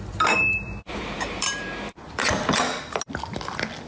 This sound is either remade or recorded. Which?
remade